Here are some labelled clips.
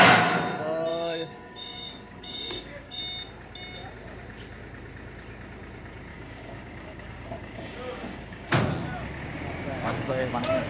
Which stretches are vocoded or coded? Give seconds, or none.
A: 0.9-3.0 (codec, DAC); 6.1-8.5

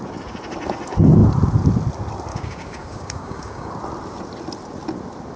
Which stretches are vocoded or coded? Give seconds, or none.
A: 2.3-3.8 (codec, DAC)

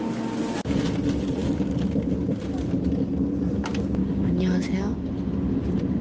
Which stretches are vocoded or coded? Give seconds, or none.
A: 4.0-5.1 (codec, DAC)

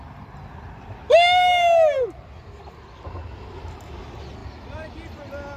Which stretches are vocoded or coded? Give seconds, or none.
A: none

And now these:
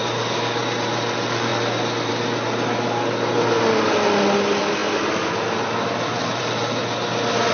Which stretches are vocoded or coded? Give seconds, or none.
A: 0.0-0.6 (codec, DAC)